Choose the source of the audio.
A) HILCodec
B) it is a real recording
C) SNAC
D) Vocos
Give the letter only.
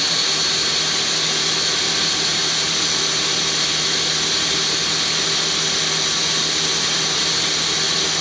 B